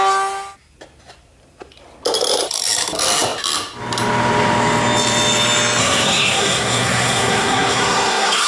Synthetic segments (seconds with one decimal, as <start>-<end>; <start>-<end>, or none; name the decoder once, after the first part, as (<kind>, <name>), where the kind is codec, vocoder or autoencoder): 5.8-8.5 (codec, SNAC)